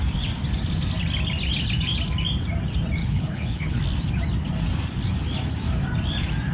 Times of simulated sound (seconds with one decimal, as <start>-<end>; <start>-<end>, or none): 3.0-3.8